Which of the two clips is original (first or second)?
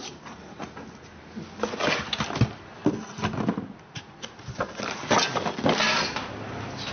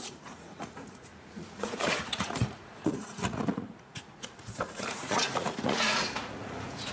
first